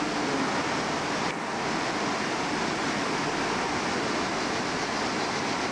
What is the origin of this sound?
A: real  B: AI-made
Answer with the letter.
A